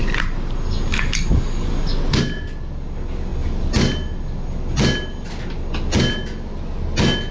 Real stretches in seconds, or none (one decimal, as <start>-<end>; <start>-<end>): 0.0-0.9; 1.7-7.3